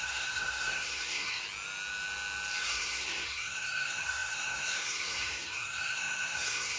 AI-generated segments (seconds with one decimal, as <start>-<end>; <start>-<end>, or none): 0.0-1.4; 2.6-6.8